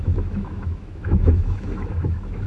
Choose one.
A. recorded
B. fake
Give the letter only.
B